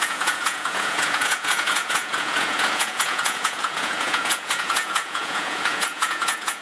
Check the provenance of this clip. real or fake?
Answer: fake